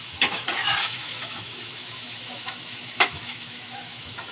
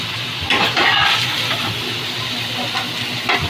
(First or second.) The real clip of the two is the second